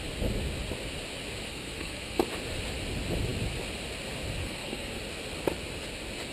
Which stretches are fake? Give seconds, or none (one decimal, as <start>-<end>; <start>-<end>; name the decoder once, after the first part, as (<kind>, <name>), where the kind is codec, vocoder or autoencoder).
1.5-2.2 (codec, SNAC); 4.4-5.0